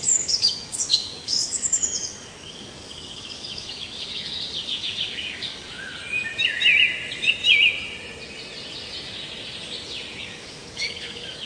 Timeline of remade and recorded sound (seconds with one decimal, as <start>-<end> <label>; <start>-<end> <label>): 0.0-5.9 remade; 5.9-10.2 recorded; 10.2-11.5 remade